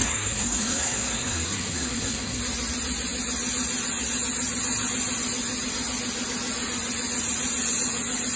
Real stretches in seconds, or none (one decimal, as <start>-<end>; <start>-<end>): 2.4-8.4